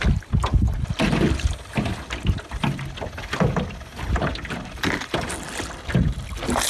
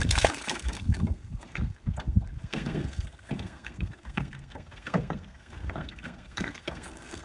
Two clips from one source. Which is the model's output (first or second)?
second